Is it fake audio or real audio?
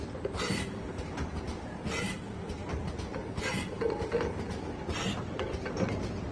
real